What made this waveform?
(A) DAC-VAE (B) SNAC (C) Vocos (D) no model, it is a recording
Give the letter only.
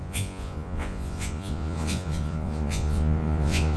C